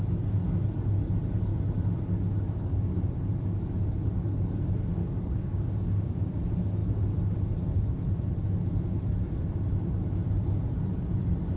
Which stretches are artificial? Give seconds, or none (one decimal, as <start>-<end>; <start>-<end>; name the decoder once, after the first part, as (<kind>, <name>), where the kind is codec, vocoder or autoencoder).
5.0-6.3 (codec, DAC)